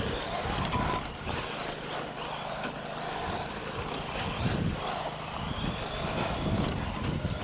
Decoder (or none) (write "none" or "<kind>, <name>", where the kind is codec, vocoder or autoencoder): none